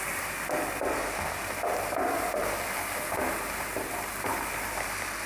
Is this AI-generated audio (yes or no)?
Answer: no